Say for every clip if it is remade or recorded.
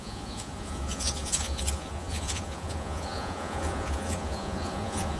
remade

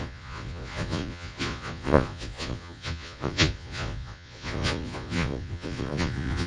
remade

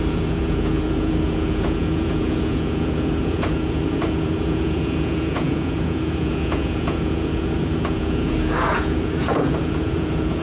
remade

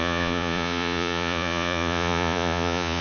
remade